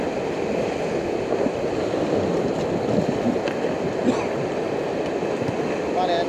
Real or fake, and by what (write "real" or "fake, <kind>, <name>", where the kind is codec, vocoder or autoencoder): real